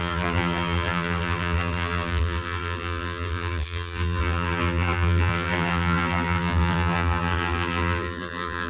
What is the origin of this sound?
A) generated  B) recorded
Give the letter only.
A